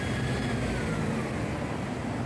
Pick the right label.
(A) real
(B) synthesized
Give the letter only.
A